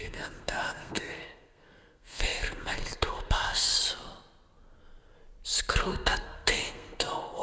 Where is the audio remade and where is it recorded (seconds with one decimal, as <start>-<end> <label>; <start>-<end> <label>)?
0.0-3.7 remade; 3.7-5.7 recorded; 5.7-7.4 remade